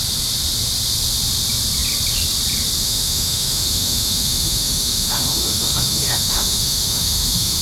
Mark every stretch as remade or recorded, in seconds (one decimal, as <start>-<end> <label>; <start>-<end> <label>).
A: 0.0-2.8 recorded; 2.8-7.6 remade

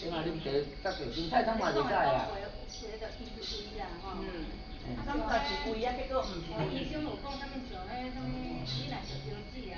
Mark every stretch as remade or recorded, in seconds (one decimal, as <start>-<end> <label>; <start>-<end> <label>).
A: 0.0-9.8 recorded

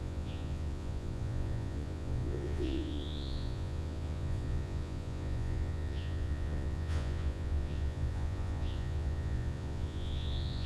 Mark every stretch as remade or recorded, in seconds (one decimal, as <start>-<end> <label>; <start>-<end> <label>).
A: 0.0-10.7 remade

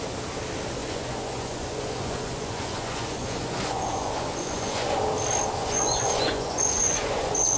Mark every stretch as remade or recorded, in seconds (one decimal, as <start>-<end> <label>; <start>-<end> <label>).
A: 0.0-0.8 recorded; 0.8-5.0 remade; 5.0-5.6 recorded; 5.6-7.6 remade

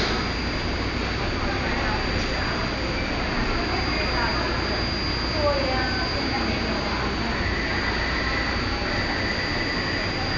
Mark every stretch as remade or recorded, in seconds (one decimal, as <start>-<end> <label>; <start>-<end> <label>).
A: 0.0-10.4 recorded

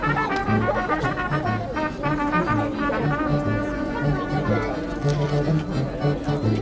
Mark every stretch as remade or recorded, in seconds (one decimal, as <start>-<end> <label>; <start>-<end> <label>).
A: 0.0-3.6 recorded; 3.6-4.5 remade; 4.5-6.6 recorded

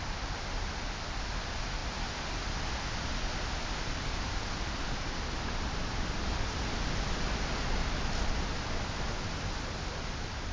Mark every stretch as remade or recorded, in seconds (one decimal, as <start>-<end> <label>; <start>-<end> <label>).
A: 0.0-10.5 recorded